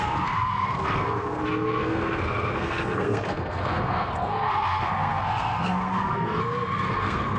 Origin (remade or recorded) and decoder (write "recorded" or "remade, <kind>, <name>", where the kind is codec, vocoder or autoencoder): remade, codec, SNAC